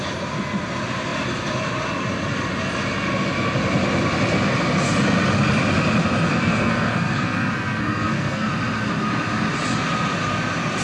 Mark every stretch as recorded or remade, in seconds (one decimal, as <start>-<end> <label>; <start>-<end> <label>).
0.0-6.3 recorded; 6.3-8.5 remade; 8.5-10.8 recorded